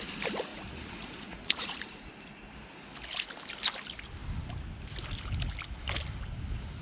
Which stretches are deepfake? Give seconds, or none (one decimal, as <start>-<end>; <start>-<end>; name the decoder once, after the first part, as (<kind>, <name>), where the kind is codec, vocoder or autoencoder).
0.5-2.1 (vocoder, Vocos)